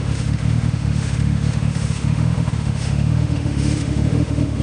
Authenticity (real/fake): fake